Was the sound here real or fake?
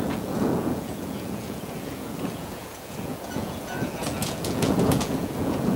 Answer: fake